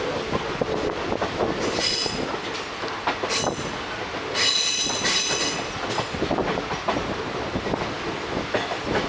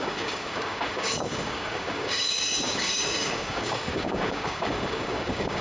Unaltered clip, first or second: first